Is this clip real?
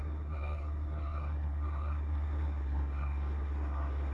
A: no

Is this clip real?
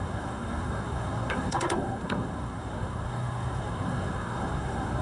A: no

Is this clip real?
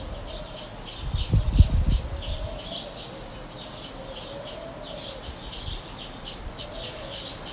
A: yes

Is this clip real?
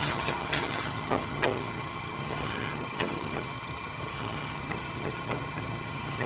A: no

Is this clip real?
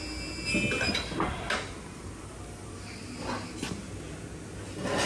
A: yes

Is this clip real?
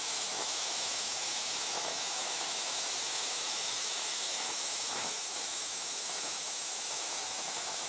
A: no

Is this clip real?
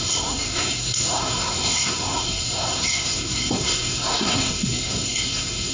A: no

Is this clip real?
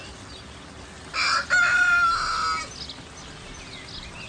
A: yes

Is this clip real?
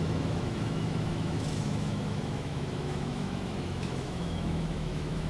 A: no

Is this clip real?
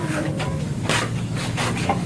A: no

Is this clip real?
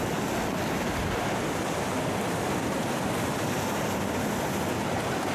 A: yes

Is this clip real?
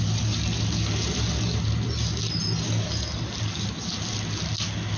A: yes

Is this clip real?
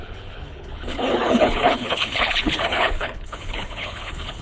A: no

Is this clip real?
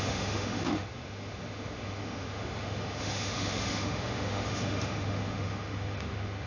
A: no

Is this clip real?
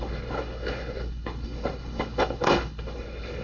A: no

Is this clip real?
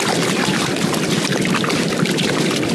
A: yes